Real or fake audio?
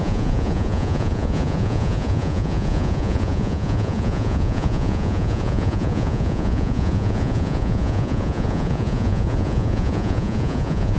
fake